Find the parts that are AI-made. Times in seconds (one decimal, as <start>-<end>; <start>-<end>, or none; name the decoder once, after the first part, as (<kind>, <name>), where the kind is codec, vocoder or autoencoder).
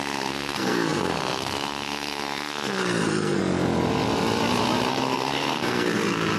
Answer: 0.0-3.4 (codec, SNAC); 4.9-6.4